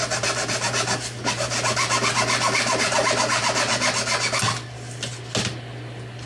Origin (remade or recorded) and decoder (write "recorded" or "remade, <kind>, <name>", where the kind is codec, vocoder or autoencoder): recorded